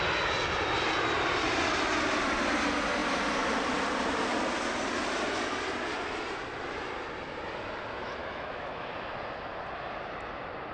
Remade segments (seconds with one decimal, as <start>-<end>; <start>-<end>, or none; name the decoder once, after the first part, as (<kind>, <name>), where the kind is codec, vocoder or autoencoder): 8.2-8.9 (autoencoder, DAC-VAE)